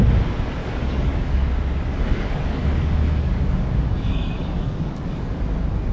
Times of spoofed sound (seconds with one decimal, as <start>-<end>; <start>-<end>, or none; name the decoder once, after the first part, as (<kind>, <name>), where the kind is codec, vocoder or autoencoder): 0.6-1.5 (codec, DAC); 1.9-5.4